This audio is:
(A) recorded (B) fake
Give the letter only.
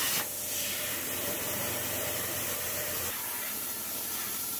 B